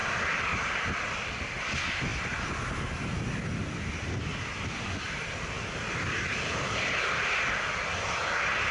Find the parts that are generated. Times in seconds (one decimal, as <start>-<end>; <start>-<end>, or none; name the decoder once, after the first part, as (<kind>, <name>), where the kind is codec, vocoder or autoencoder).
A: 0.0-1.6 (vocoder, BigVGAN v2)